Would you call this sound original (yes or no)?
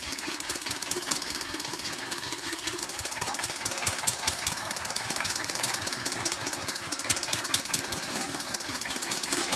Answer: no